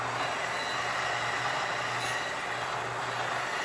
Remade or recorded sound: recorded